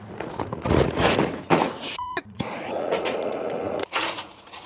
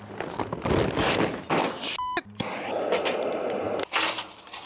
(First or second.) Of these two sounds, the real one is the second